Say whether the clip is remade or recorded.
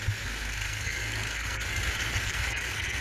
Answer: remade